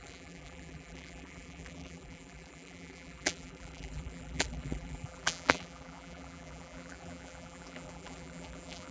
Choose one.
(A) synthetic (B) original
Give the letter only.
A